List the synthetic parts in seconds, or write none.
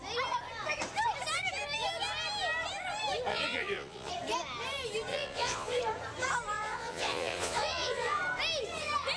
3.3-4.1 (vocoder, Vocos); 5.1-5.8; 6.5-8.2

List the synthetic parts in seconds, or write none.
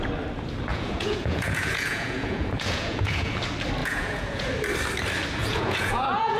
0.7-3.3 (vocoder, Vocos); 3.8-4.4; 5.4-6.4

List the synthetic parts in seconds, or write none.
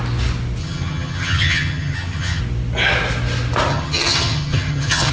0.6-2.4 (vocoder, HiFi-GAN); 3.7-5.1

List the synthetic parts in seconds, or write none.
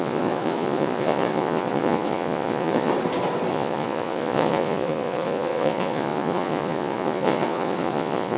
0.0-2.9 (vocoder, Vocos); 3.5-8.4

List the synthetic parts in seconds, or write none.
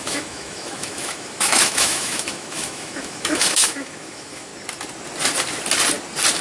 0.0-4.5 (autoencoder, DAC-VAE)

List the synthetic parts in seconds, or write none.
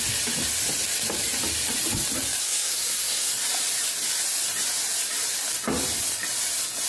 2.4-3.3 (codec, SNAC)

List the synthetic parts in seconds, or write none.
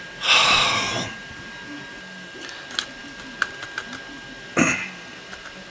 none